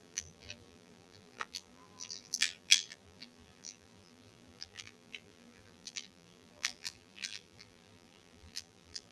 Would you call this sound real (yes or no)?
no